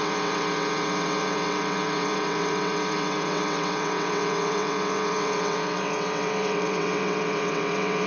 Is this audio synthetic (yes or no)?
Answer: yes